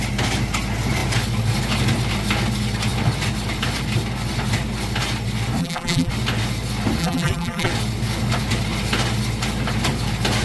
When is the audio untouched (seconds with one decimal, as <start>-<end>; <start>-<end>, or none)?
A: 0.0-5.6; 6.1-7.0; 7.7-10.4